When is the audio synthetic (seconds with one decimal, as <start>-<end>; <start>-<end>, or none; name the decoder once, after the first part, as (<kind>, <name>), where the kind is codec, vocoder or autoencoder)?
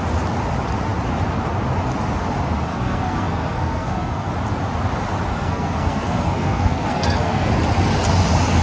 2.7-4.3 (codec, SNAC); 5.3-7.5